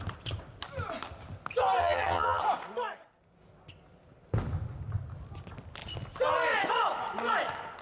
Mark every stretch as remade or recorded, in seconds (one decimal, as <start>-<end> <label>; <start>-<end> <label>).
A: 0.0-1.8 recorded; 1.8-2.4 remade; 2.4-7.8 recorded